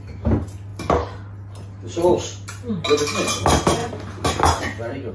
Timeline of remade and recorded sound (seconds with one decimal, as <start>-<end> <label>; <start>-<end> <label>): 0.0-5.1 recorded